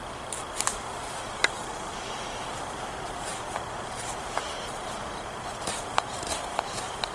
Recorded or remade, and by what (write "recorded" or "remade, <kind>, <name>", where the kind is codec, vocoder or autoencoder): remade, vocoder, BigVGAN v2